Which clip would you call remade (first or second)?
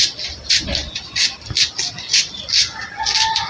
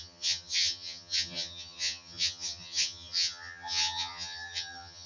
second